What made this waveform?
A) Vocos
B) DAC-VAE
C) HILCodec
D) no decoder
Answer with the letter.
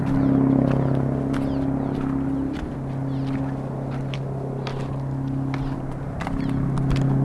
D